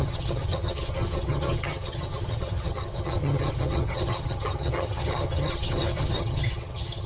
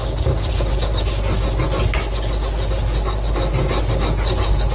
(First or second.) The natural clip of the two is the second